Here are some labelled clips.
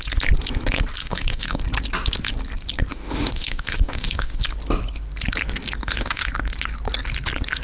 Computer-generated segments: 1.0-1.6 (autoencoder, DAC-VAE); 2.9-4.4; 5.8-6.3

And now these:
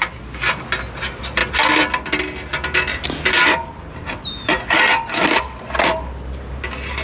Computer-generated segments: none

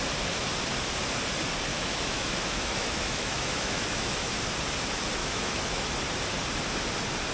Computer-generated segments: 1.7-4.4 (autoencoder, DAC-VAE); 5.2-5.9